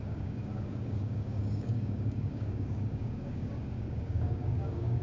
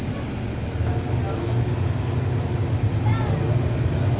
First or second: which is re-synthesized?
first